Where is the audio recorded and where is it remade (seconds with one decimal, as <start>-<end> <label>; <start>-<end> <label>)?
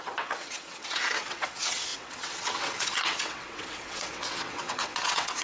0.0-5.4 remade